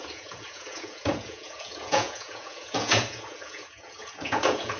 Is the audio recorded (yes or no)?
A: no